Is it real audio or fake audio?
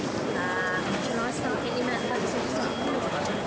real